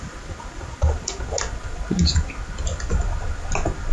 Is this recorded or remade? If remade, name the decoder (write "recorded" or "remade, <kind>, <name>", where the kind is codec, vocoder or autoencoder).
recorded